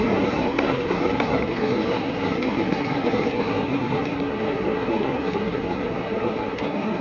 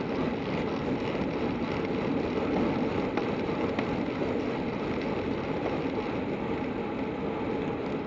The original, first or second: second